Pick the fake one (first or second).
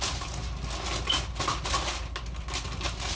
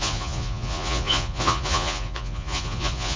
second